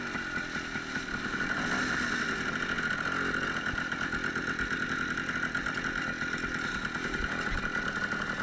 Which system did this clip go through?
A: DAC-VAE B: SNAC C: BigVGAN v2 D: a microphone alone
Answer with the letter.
D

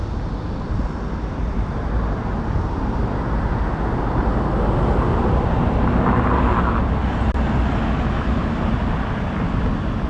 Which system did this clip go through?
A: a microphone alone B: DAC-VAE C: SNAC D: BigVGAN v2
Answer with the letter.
A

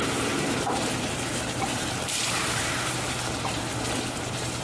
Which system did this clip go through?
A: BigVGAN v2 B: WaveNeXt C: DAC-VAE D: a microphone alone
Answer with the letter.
A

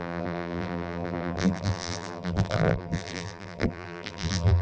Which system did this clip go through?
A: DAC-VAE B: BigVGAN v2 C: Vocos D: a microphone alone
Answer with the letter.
B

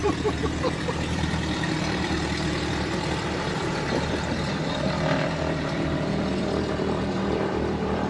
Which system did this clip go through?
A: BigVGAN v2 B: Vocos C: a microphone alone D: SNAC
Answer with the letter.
A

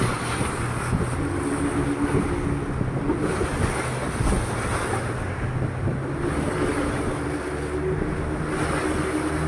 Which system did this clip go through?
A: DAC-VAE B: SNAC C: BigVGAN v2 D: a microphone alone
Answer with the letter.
D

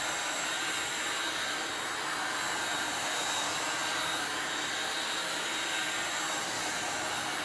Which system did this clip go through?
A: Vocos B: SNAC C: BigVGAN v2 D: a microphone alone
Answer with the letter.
D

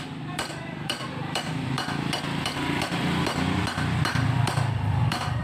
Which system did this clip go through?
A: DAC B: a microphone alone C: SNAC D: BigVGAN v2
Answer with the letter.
D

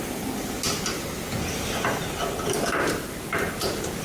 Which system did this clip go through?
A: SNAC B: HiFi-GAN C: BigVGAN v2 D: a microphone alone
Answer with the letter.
D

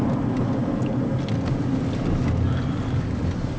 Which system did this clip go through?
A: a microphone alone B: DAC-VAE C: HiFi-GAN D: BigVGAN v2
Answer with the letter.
A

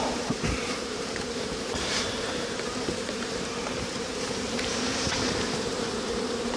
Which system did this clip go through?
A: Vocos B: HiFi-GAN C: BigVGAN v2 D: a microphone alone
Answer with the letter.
C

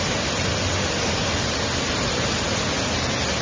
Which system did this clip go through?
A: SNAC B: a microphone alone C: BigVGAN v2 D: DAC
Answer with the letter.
B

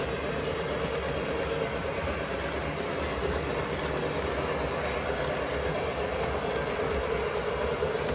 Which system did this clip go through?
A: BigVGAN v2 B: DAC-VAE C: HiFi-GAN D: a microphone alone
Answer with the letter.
D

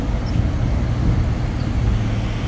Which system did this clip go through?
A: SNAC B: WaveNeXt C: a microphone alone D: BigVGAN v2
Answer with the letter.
C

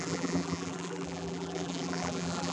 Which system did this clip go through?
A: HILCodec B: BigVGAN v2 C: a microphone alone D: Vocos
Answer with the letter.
B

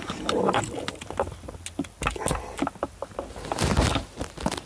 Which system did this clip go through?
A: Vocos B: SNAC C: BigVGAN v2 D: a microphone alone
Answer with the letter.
D